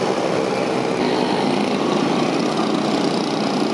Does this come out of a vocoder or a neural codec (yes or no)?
no